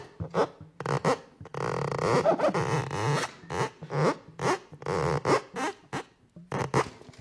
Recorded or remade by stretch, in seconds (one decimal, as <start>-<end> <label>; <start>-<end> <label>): 0.0-7.2 recorded